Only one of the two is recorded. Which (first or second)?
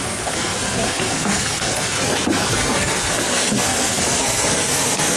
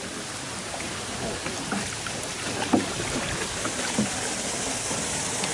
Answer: second